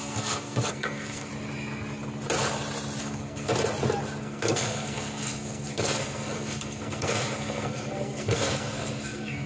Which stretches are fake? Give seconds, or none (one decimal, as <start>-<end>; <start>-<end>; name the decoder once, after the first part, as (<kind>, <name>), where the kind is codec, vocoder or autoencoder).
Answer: 0.0-1.3 (codec, SNAC); 3.0-3.5; 4.2-9.5